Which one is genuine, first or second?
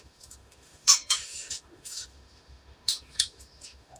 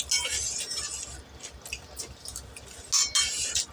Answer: second